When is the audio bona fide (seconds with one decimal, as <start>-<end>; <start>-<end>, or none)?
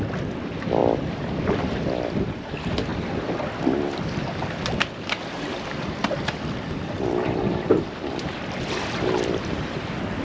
2.9-5.8